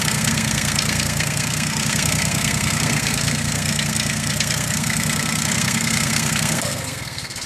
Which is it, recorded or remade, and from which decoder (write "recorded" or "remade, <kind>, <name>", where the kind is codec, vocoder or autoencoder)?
remade, codec, SNAC